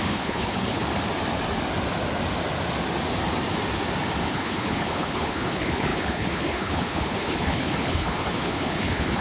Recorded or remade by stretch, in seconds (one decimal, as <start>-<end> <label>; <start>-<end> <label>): 0.0-0.8 remade; 0.8-4.3 recorded; 4.3-9.2 remade